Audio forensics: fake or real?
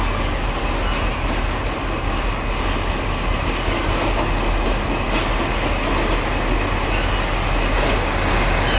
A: real